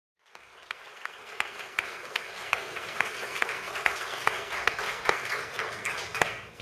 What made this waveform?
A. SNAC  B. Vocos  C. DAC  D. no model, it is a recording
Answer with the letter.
A